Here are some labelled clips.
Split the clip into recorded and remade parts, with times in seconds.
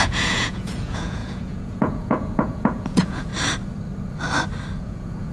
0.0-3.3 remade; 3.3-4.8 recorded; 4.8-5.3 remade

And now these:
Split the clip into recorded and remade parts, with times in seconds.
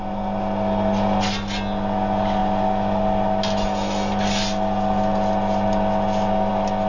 0.0-6.9 recorded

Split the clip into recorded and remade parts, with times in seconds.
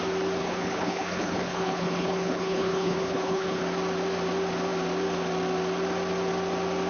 0.0-0.4 recorded; 0.4-3.6 remade; 3.6-6.9 recorded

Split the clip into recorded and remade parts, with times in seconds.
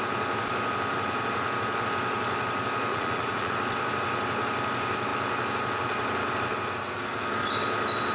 0.0-2.9 recorded; 2.9-3.5 remade; 3.5-8.1 recorded